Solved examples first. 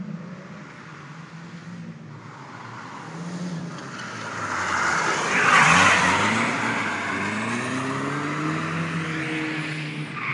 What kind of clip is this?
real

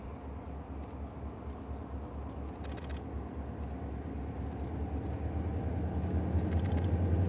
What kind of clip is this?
real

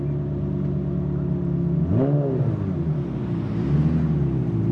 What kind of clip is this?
real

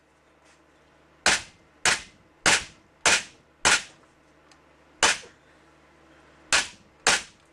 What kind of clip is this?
real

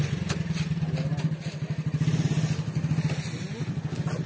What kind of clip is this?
real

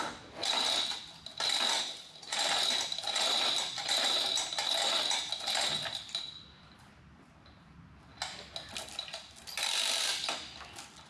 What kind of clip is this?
real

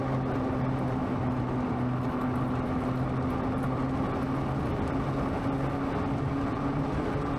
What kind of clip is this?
real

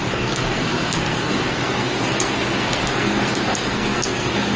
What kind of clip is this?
fake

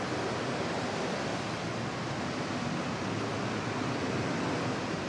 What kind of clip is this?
real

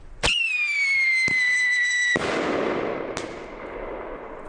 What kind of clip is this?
real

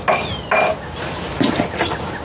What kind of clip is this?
real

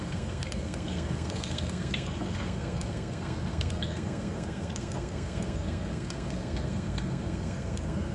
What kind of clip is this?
fake